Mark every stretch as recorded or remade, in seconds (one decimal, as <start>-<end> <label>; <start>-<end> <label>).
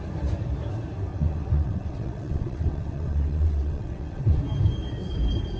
0.0-1.1 recorded; 1.1-4.4 remade; 4.4-5.6 recorded